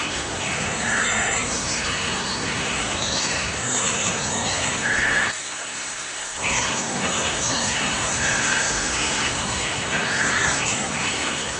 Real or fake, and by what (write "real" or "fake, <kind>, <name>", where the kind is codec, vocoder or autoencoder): fake, codec, SNAC